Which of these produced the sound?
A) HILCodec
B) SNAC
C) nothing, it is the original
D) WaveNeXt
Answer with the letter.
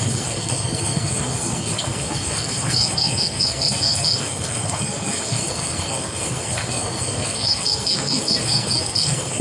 B